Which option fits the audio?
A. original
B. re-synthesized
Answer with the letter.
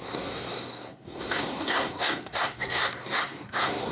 B